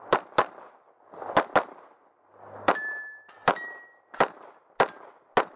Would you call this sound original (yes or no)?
yes